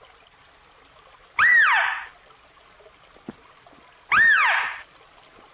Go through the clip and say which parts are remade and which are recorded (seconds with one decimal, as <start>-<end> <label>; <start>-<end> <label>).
0.0-5.5 recorded